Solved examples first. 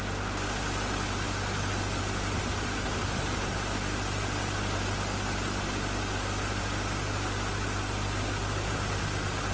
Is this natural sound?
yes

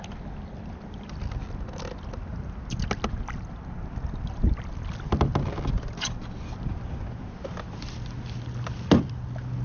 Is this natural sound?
yes